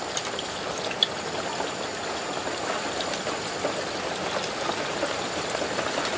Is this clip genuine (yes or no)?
yes